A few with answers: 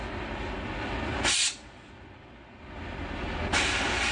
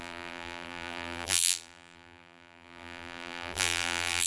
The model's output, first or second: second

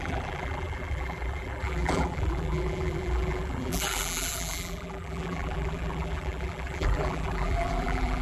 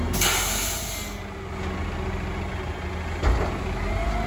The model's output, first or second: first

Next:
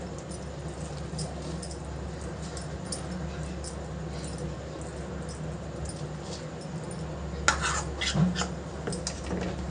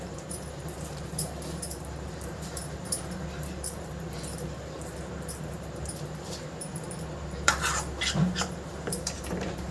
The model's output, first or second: second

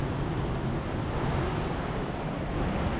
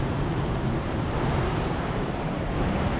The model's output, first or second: second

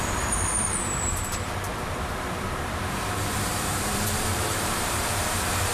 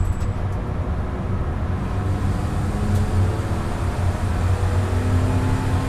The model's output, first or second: first